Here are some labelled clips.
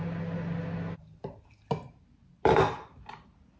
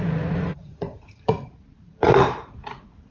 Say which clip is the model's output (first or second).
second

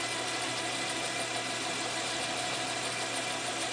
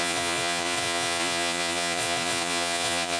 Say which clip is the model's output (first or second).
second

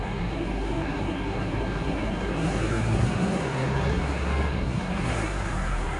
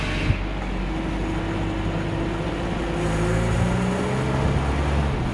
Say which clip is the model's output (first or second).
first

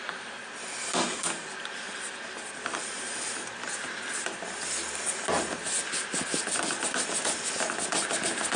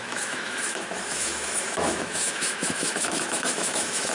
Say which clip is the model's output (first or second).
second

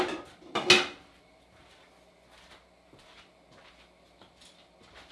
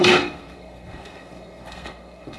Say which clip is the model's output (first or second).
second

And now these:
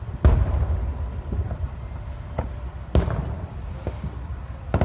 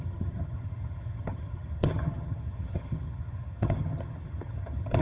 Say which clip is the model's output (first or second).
second